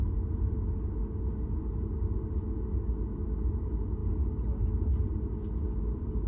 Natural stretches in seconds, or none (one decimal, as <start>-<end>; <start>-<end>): 0.0-6.3